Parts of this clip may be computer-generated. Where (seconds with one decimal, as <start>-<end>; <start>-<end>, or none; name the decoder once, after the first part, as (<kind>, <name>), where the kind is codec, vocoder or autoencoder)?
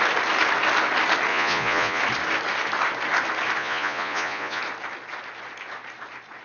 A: 1.3-2.0 (vocoder, Vocos); 3.6-4.6